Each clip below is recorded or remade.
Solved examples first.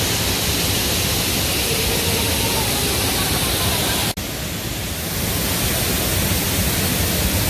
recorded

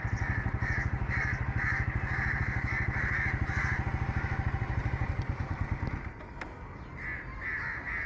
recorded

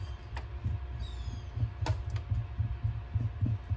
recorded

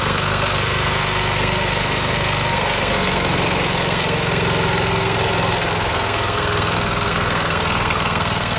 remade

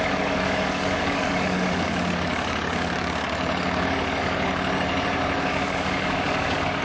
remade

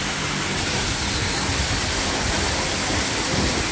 recorded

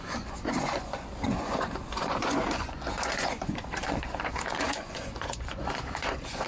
remade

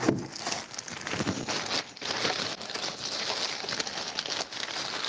recorded